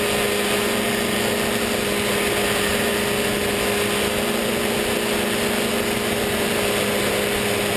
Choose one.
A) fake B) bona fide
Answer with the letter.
B